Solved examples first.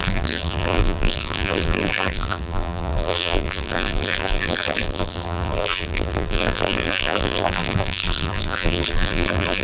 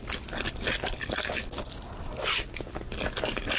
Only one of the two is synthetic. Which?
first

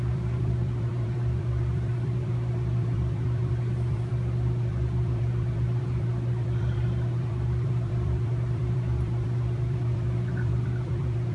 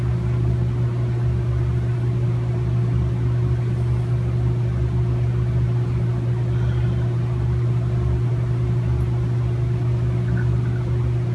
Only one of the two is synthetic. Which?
first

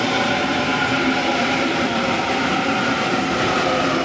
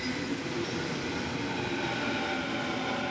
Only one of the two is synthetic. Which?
first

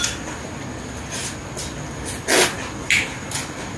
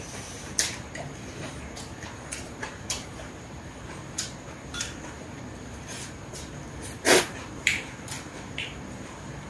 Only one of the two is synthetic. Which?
second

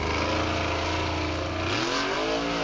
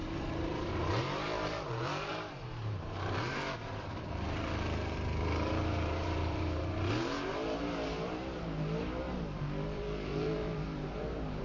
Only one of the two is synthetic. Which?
second